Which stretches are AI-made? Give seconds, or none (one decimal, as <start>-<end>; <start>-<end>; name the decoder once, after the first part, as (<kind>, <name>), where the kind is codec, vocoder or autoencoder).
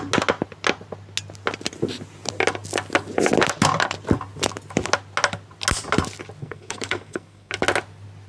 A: 6.4-7.5 (codec, SNAC)